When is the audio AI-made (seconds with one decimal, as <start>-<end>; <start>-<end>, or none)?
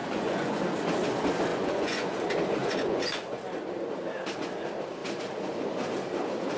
0.0-0.6; 1.5-2.2; 2.6-3.4